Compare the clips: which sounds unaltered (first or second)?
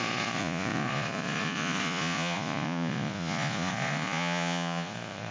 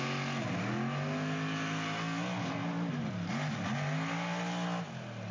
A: second